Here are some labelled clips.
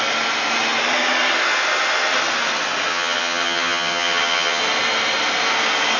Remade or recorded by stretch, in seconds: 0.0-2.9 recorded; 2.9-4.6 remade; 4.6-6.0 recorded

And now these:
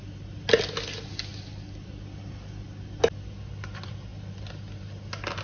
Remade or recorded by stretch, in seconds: 0.0-5.4 recorded

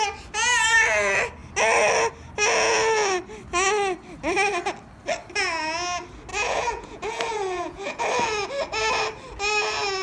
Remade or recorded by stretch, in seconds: 0.0-6.3 recorded; 6.3-8.0 remade; 8.0-10.0 recorded

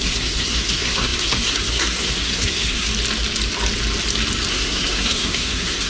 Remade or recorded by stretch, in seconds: 0.0-2.9 remade; 2.9-4.5 recorded; 4.5-5.9 remade

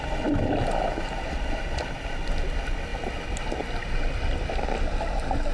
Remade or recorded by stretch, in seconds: 0.0-5.5 recorded

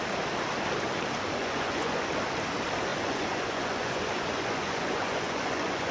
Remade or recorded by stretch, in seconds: 0.0-1.4 recorded; 1.4-2.1 remade; 2.1-2.9 recorded; 2.9-5.9 remade